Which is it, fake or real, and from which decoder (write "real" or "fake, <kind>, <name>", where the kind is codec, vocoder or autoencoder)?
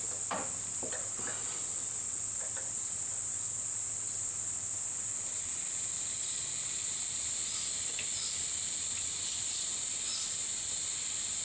real